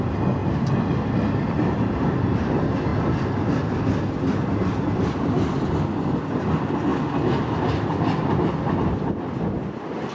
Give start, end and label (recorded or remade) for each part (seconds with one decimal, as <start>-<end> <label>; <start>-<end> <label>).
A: 0.0-10.1 recorded